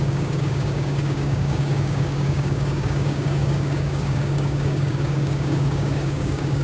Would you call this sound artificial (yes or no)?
yes